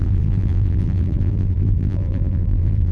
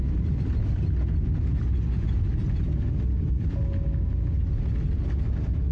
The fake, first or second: first